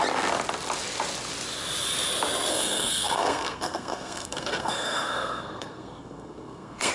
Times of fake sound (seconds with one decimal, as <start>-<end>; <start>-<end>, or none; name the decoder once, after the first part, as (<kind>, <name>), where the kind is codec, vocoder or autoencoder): 2.5-6.9 (codec, SNAC)

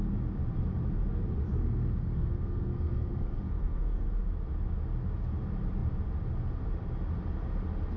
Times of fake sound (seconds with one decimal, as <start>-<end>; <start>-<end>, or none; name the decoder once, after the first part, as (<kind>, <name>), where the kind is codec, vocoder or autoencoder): 1.5-4.1 (codec, SNAC)